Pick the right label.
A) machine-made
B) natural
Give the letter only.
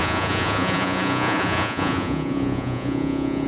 A